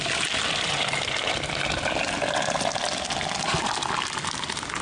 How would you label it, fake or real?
real